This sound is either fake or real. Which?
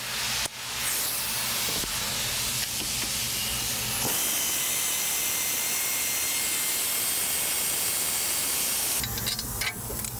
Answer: real